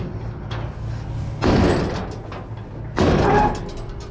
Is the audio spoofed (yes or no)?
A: no